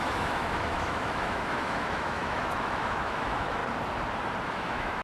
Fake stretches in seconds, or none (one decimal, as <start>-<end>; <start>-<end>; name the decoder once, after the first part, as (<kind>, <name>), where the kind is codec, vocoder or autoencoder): 0.0-3.6 (autoencoder, DAC-VAE); 4.4-5.0